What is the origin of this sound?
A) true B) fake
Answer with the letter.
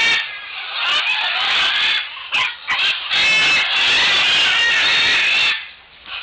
A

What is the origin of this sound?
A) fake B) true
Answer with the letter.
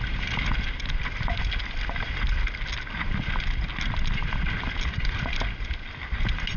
B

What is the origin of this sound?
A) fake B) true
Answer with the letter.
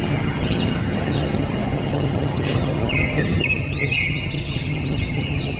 A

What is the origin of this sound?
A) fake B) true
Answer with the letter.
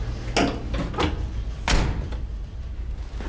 B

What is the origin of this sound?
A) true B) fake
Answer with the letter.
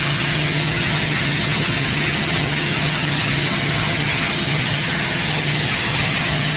B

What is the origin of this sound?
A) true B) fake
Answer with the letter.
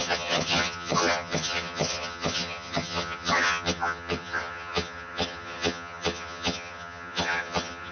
B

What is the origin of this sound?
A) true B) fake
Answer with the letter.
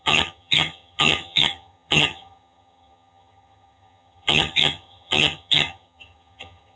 B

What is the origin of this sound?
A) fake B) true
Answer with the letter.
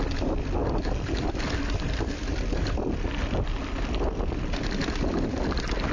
B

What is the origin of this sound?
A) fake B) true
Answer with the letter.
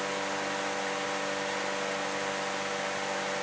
B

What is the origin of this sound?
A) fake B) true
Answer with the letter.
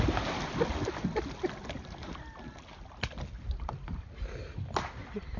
B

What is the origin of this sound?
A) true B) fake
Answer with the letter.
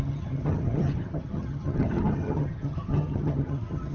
B